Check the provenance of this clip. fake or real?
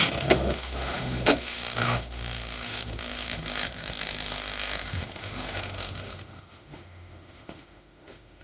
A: fake